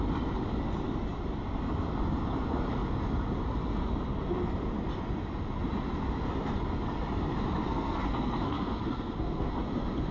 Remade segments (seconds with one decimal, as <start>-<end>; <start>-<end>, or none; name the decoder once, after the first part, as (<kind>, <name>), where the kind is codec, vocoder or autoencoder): 7.6-9.5 (codec, SNAC)